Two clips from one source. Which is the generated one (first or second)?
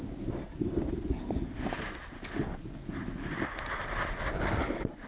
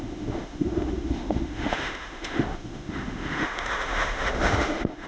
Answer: second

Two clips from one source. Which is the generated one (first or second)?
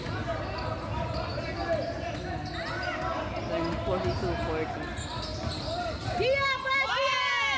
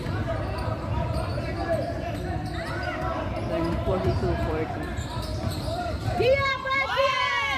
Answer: second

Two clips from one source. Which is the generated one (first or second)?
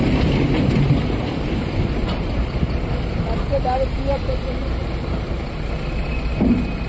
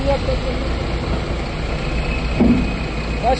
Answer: first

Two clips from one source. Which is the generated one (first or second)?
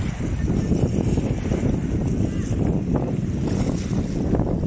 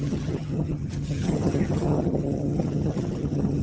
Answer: second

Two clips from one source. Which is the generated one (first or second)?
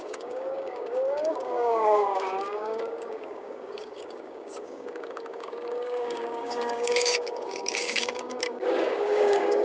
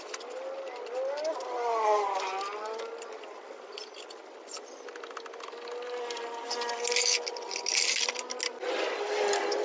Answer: first